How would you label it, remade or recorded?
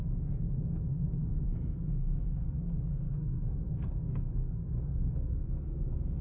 remade